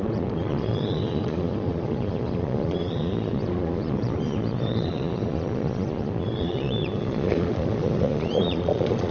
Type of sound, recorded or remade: remade